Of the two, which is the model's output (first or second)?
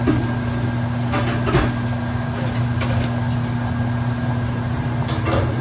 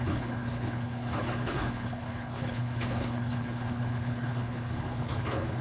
second